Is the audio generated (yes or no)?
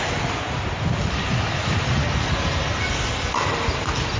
no